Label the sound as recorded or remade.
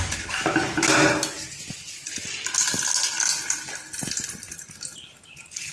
recorded